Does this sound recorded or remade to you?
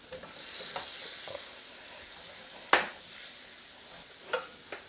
recorded